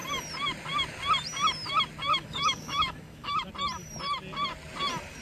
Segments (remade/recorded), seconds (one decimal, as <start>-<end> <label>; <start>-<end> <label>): 0.0-2.1 recorded; 2.1-3.5 remade; 3.5-5.2 recorded